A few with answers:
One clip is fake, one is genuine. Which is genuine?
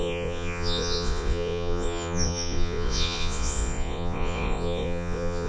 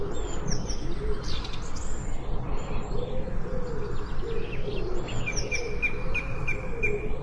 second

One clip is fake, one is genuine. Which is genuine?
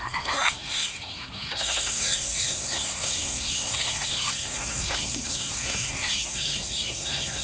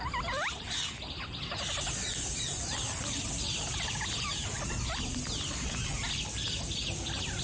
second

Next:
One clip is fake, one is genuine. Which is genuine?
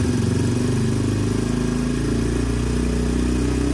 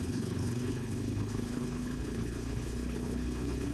first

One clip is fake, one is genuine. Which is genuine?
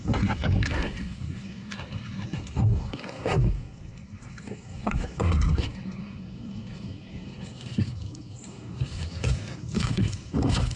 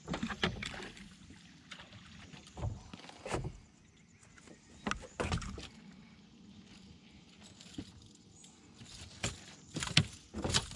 second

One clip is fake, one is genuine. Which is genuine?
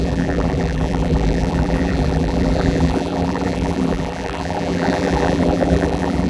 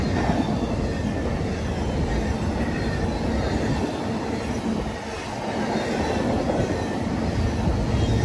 second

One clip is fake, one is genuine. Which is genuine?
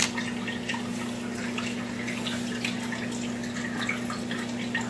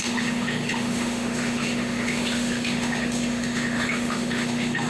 first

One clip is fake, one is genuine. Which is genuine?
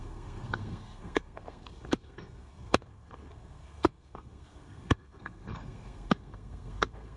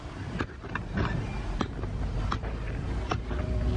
second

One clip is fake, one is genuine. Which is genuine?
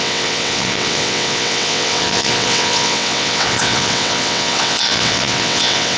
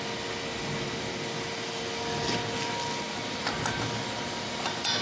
second